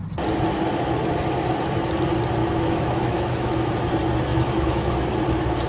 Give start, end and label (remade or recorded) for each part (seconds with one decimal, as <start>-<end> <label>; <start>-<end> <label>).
0.0-2.4 recorded; 2.4-3.7 remade; 3.7-4.3 recorded; 4.3-4.9 remade; 4.9-5.7 recorded